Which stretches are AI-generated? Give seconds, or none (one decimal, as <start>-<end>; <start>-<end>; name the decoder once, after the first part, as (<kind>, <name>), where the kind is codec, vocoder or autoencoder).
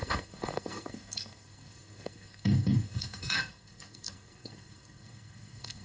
0.0-5.8 (codec, SNAC)